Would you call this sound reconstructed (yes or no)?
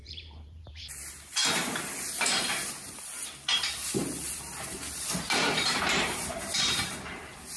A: yes